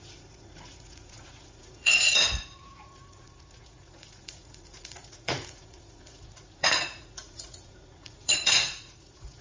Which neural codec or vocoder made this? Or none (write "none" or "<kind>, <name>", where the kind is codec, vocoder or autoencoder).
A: vocoder, Vocos